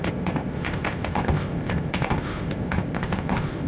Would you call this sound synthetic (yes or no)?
yes